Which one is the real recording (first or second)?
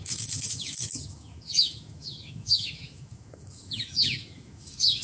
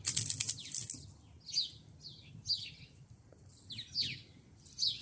second